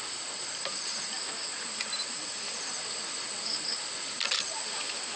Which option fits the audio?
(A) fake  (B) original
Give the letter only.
B